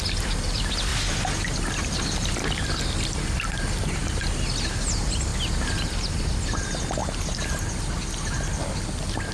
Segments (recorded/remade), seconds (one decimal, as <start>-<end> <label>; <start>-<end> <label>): 0.0-0.9 recorded; 0.9-3.5 remade; 3.5-5.3 recorded; 5.3-5.9 remade; 5.9-7.0 recorded; 7.0-8.7 remade; 8.7-9.3 recorded